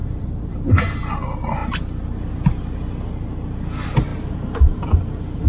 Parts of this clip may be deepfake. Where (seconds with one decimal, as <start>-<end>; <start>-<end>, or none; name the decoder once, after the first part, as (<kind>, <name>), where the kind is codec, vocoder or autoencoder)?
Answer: 0.0-0.8 (vocoder, BigVGAN v2); 1.6-3.0